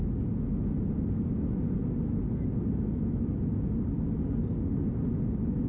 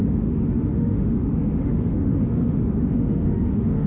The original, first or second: first